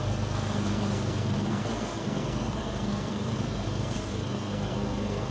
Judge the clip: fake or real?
fake